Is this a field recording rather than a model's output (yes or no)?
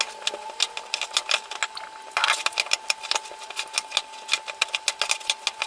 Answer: yes